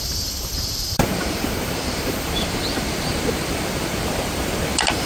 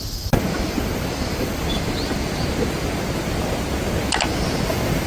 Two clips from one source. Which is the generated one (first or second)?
first